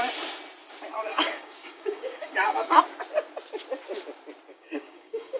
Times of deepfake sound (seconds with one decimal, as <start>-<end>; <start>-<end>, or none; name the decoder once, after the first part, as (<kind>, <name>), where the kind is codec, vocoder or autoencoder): 1.1-2.8 (codec, DAC); 4.5-5.4